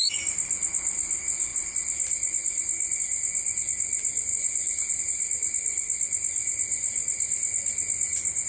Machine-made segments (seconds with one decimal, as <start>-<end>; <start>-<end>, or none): 4.3-5.0